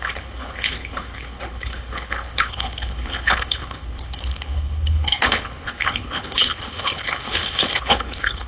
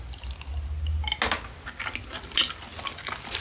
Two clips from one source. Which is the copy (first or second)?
first